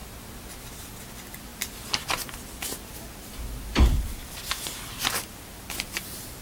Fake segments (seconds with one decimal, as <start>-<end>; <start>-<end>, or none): 1.0-6.4

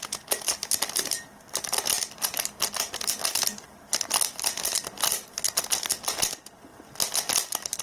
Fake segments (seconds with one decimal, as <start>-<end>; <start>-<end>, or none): none

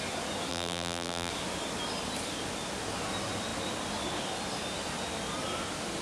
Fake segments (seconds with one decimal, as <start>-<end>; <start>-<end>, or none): 0.5-1.3

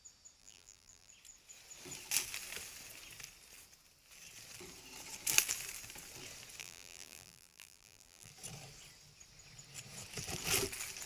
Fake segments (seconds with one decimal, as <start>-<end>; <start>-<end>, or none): 0.4-1.1; 6.6-8.3